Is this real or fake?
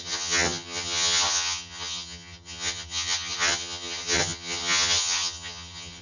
fake